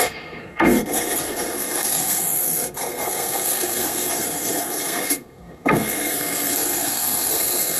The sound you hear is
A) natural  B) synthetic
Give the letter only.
B